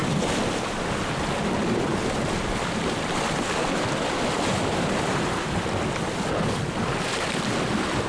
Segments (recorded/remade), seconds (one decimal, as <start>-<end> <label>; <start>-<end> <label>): 0.0-8.1 recorded

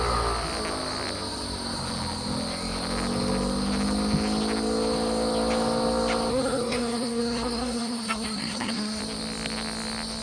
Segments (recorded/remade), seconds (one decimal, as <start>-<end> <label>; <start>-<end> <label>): 0.0-6.3 recorded; 6.3-9.0 remade; 9.0-10.2 recorded

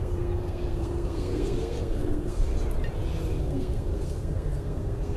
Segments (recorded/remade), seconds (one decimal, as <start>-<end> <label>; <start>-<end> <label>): 0.0-2.5 remade; 2.5-3.4 recorded; 3.4-5.2 remade

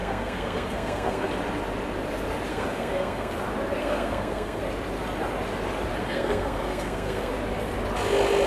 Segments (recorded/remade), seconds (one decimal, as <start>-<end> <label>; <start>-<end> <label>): 0.0-1.3 remade; 1.3-2.5 recorded; 2.5-3.3 remade; 3.3-3.8 recorded; 3.8-4.6 remade; 4.6-6.0 recorded; 6.0-7.3 remade; 7.3-8.5 recorded

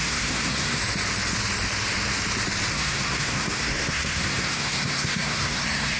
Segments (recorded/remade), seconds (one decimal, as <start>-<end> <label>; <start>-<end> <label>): 0.0-0.8 remade; 0.8-2.7 recorded; 2.7-6.0 remade

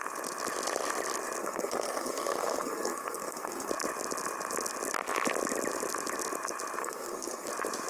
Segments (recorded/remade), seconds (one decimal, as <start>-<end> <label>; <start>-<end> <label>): 0.0-1.4 recorded; 1.4-3.7 remade; 3.7-6.8 recorded; 6.8-7.5 remade; 7.5-7.9 recorded

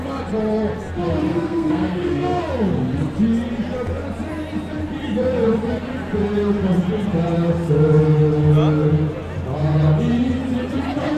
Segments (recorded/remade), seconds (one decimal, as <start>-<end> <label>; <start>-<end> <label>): 0.0-1.3 recorded; 1.3-2.4 remade; 2.4-11.2 recorded

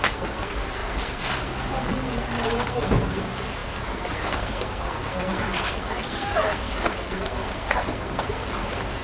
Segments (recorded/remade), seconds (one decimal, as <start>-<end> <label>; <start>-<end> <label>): 0.0-9.0 remade